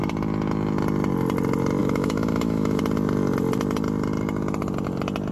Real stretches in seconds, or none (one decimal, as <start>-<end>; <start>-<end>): 0.0-1.8; 2.8-5.3

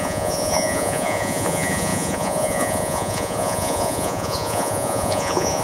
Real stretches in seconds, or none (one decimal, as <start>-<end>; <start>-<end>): none

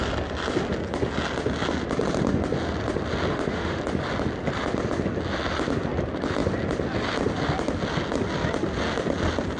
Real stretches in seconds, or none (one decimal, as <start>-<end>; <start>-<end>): 0.0-3.3; 3.8-9.6

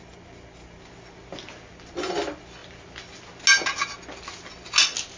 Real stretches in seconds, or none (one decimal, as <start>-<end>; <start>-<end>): 0.0-5.2

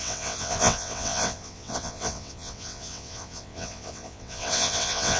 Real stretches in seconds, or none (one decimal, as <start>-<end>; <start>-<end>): none

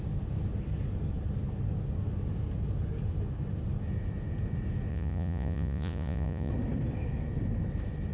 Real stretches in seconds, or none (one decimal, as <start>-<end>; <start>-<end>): 0.0-4.9; 6.5-8.1

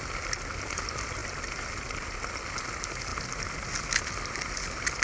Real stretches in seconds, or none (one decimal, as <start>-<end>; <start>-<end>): 0.0-5.0